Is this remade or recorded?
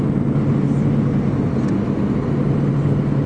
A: recorded